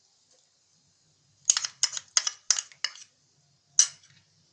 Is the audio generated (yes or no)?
no